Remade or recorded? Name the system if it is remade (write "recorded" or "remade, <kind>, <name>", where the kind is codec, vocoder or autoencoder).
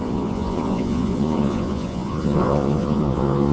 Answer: remade, vocoder, Vocos